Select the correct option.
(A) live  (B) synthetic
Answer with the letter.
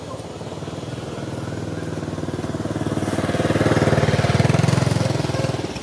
A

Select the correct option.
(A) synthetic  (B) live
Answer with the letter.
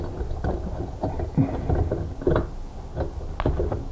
B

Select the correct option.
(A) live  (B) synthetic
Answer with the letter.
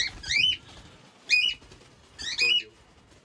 A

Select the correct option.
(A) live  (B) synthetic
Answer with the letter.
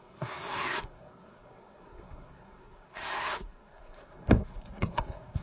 B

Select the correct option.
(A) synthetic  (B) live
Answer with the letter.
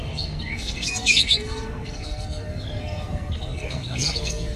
A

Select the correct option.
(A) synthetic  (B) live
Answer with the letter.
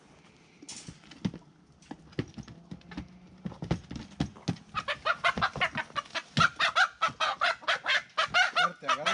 B